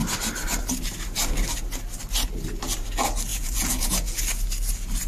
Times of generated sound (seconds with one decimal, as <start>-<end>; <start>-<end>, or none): 3.3-4.2